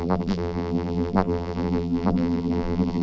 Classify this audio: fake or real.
fake